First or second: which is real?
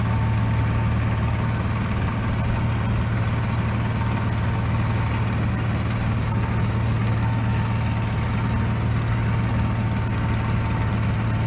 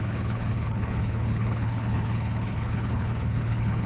first